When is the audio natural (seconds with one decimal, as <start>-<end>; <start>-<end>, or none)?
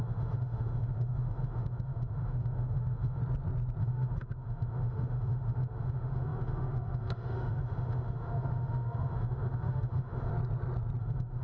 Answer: 3.2-3.8; 10.3-11.0